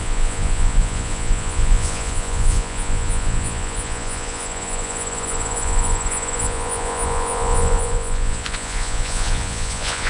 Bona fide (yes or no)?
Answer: no